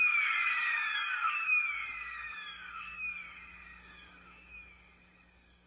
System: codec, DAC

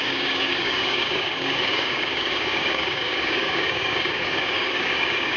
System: codec, DAC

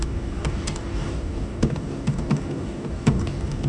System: codec, DAC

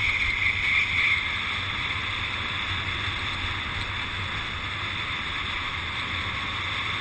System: none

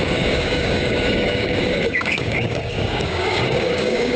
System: codec, DAC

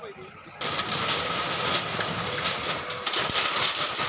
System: none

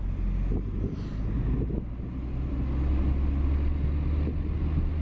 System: none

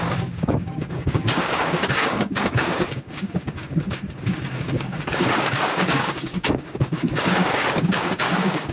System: codec, DAC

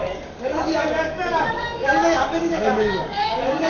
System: codec, DAC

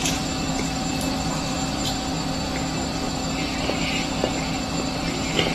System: none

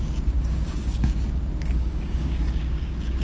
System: codec, DAC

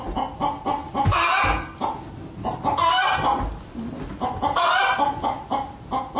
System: none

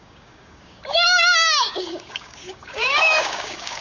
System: codec, DAC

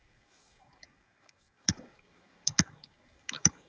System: codec, DAC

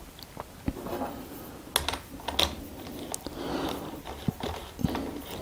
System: none